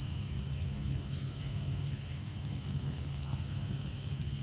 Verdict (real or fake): fake